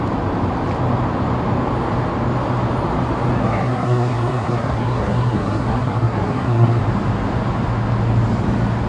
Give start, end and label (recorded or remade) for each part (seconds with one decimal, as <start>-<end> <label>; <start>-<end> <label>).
0.0-3.4 recorded; 3.4-6.8 remade; 6.8-8.9 recorded